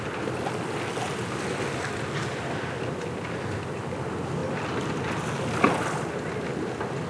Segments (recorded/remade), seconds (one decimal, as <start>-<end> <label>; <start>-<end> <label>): 0.0-7.1 recorded